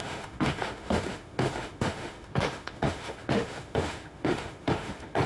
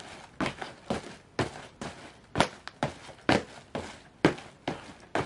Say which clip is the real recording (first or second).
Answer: second